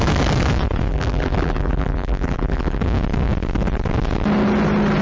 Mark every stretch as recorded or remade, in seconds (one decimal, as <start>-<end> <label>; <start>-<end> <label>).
0.0-0.9 recorded; 0.9-2.8 remade; 2.8-5.0 recorded